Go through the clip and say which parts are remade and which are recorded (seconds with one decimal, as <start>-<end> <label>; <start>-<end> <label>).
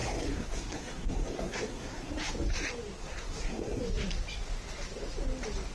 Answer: 0.0-2.1 remade; 2.1-3.0 recorded; 3.0-3.8 remade; 3.8-5.7 recorded